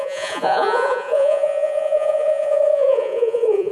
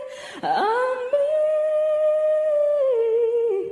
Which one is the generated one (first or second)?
first